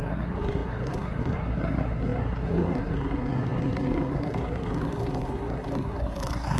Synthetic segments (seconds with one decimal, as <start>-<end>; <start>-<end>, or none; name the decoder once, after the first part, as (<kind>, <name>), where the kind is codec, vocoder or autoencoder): 0.0-6.6 (codec, SNAC)